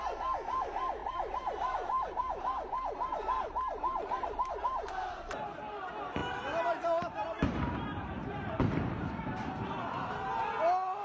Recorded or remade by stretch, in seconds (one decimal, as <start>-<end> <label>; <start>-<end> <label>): 0.0-1.0 recorded; 1.0-4.5 remade; 4.5-6.2 recorded; 6.2-10.4 remade; 10.4-11.0 recorded